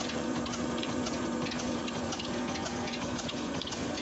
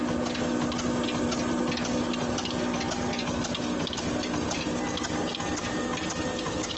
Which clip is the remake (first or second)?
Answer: first